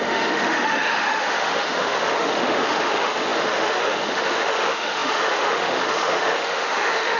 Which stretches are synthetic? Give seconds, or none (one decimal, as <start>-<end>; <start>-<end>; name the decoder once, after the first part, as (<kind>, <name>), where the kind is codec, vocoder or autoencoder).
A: 0.0-7.2 (autoencoder, DAC-VAE)